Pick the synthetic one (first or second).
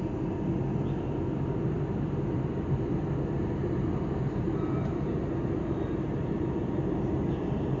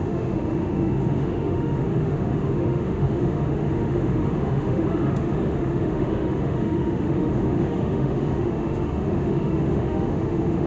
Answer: second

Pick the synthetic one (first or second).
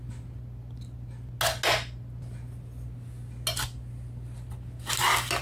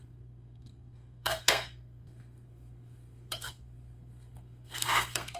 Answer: second